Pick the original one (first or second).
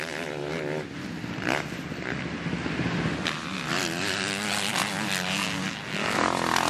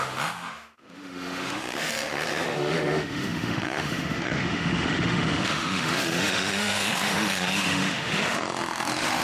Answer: first